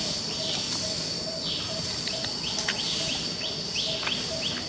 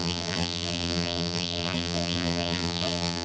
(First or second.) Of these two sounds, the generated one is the second